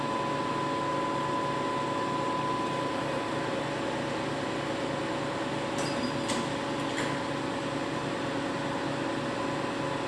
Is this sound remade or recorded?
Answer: recorded